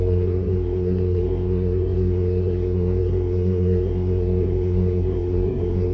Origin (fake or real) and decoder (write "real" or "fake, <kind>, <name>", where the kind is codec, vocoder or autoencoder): fake, codec, SNAC